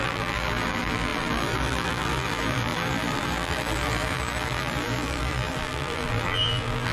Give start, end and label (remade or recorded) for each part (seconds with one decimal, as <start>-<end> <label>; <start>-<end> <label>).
0.0-6.9 remade